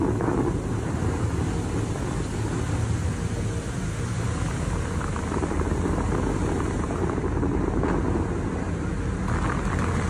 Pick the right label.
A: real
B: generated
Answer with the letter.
A